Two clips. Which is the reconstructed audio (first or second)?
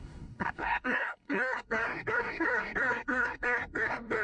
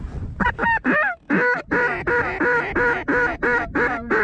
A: first